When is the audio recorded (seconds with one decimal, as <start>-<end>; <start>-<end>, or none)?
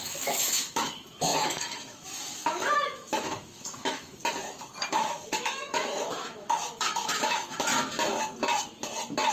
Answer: 4.2-4.9; 7.7-9.3